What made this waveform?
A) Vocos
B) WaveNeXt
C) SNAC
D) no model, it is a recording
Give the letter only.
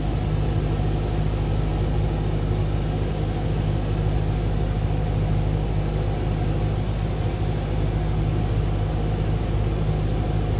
D